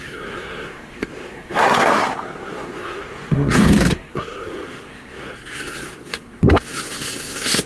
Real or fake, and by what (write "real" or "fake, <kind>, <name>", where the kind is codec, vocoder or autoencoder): fake, codec, SNAC